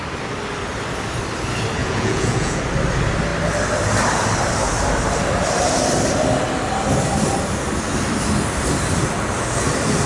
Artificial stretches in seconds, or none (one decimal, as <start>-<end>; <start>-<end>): 1.8-2.6